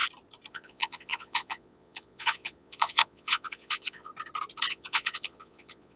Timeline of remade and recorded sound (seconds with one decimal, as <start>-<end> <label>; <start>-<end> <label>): 0.0-0.5 recorded; 0.5-4.1 remade; 4.1-4.7 recorded; 4.7-6.0 remade